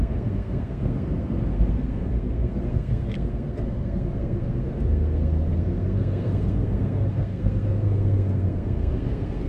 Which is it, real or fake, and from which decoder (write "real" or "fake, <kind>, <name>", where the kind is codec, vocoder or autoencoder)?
fake, codec, SNAC